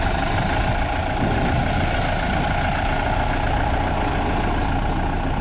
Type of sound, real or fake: real